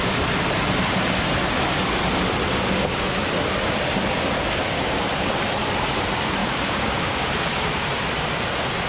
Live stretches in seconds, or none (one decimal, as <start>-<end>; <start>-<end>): 0.0-6.4; 7.7-8.9